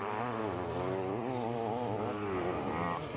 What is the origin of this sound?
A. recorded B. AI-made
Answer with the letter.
A